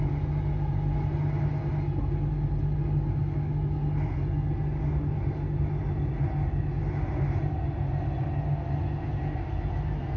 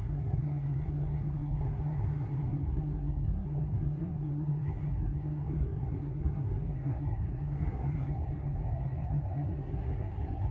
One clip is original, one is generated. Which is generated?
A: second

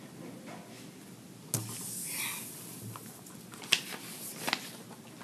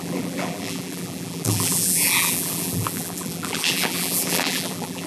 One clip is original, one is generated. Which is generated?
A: second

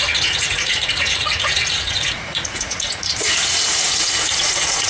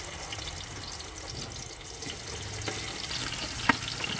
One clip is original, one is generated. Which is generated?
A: first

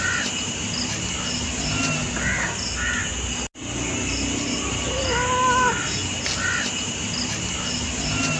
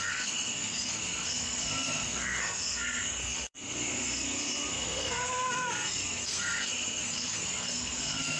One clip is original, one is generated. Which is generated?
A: second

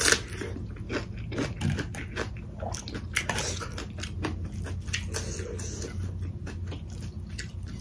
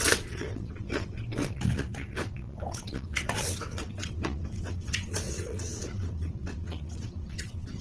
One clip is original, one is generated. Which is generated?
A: second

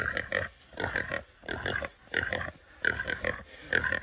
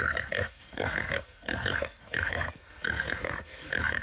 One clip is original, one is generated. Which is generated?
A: second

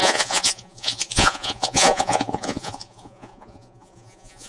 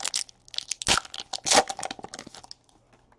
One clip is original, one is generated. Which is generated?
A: first